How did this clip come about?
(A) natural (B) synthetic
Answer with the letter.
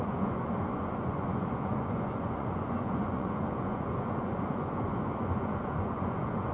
B